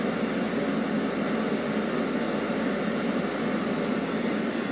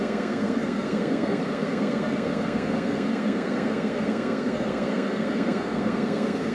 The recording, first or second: first